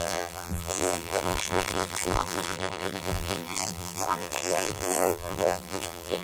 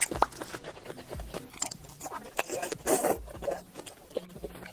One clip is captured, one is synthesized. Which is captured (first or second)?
second